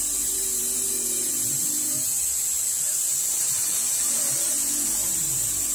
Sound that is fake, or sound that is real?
fake